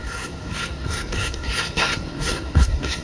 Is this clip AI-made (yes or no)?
yes